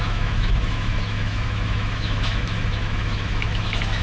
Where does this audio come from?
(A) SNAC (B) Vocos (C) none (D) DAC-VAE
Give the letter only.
D